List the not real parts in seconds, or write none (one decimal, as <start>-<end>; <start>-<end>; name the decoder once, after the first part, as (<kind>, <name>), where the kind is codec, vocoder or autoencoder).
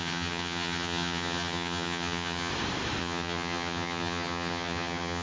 0.0-2.5 (vocoder, HiFi-GAN); 3.0-5.2